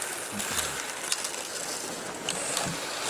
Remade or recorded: recorded